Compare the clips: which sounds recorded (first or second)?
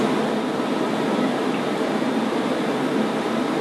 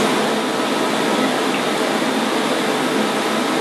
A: second